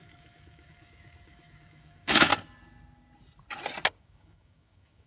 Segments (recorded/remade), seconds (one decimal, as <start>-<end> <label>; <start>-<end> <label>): 0.0-2.3 remade; 2.3-4.0 recorded; 4.0-5.1 remade